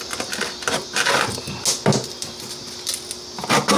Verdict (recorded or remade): recorded